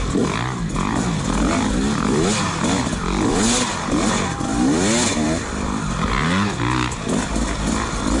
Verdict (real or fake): real